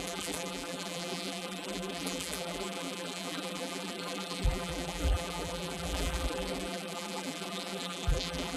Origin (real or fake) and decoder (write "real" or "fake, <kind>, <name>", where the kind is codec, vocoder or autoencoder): fake, vocoder, BigVGAN v2